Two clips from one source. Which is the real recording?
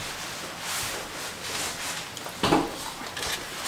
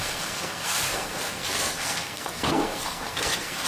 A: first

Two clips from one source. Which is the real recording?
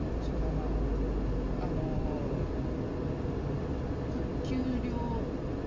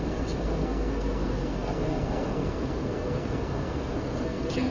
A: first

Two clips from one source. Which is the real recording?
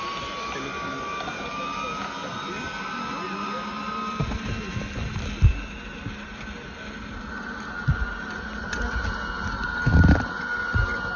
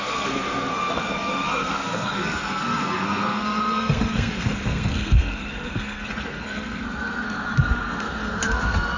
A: first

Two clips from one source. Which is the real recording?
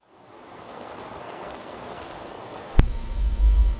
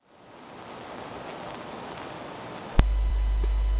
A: second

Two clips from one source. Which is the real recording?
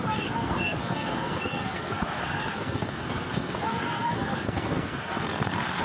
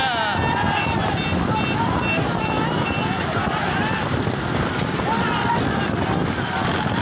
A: second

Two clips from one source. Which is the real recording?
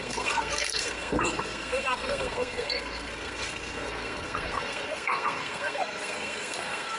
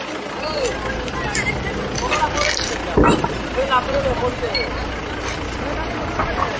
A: second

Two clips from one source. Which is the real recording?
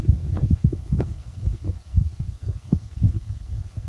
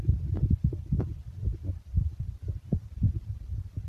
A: second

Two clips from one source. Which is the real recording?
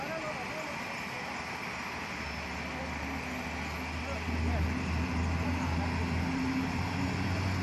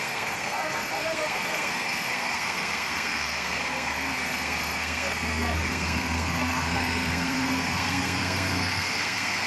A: first